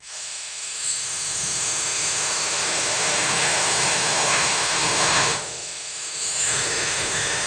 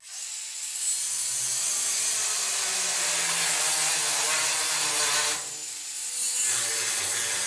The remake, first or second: first